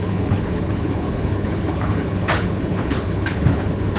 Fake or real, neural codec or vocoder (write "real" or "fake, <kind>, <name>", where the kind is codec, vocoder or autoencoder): fake, codec, HILCodec